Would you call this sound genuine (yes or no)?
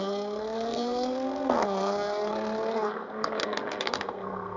no